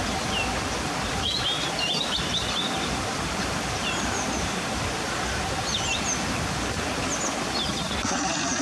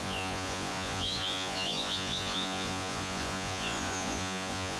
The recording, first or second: first